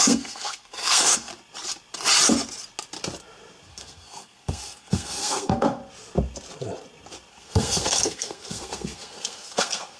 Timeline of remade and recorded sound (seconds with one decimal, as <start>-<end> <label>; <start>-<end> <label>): 0.0-1.3 remade; 1.3-3.7 recorded; 3.7-5.8 remade; 5.8-7.3 recorded; 7.3-10.0 remade